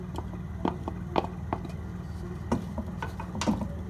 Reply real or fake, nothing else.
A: real